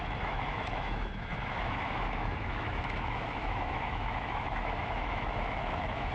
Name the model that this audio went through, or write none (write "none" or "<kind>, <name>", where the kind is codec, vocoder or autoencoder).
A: autoencoder, DAC-VAE